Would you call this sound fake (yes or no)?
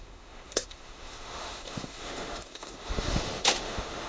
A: yes